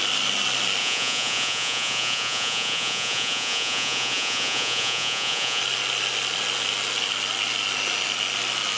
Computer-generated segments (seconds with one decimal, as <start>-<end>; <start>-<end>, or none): 0.8-5.6